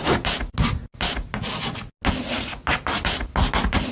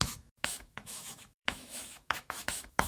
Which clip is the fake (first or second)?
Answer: second